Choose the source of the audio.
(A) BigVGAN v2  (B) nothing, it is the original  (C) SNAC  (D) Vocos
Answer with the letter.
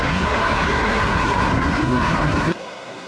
C